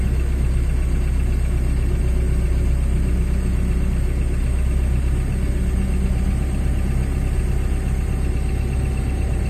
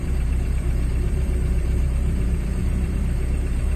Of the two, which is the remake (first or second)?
second